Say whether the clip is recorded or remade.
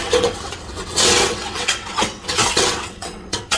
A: remade